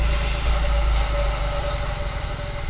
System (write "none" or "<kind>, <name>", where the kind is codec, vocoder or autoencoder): none